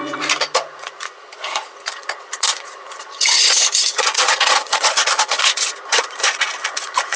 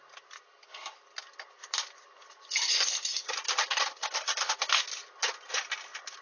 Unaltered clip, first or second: second